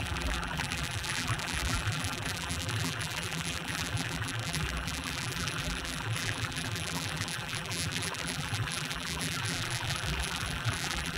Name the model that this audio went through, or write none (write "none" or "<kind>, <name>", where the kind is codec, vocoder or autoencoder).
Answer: vocoder, BigVGAN v2